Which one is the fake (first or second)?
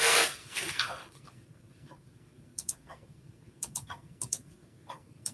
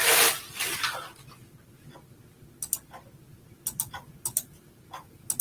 first